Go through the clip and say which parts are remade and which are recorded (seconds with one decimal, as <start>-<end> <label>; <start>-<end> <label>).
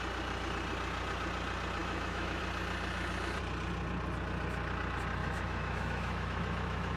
0.0-1.8 recorded; 1.8-2.4 remade; 2.4-5.2 recorded; 5.2-7.0 remade